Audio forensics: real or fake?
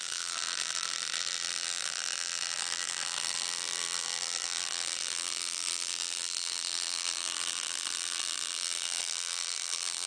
fake